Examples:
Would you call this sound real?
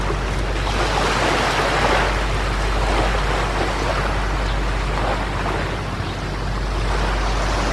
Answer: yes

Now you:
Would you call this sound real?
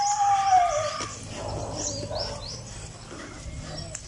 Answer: yes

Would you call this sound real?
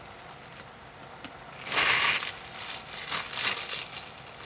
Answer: yes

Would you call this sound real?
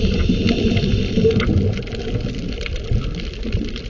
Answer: yes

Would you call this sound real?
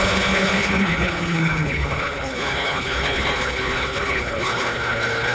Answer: no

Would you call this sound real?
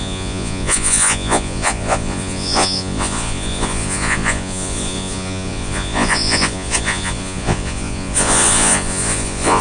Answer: no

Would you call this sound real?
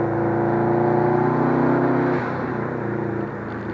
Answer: yes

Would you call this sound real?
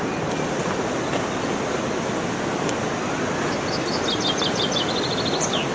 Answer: yes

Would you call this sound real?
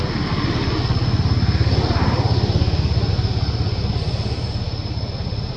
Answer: yes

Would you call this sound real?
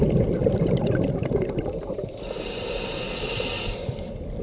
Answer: yes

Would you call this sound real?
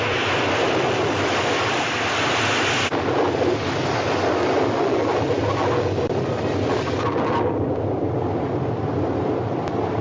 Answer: yes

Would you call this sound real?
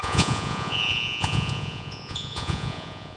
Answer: no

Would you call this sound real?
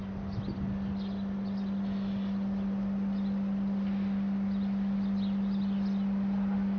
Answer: yes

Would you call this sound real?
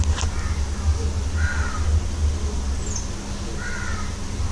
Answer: yes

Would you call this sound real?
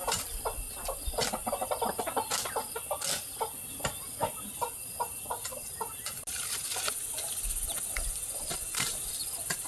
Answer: yes